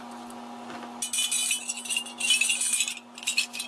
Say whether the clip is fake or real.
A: real